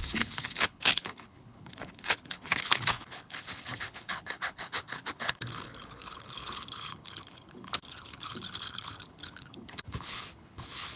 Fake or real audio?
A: fake